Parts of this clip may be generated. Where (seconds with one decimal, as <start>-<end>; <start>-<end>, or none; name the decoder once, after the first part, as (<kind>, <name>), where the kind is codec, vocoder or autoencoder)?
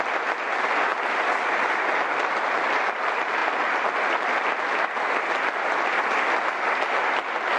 none